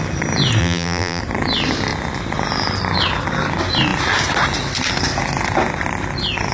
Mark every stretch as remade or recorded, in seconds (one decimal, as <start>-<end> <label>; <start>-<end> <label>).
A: 0.0-0.6 recorded; 0.6-1.2 remade; 1.2-6.5 recorded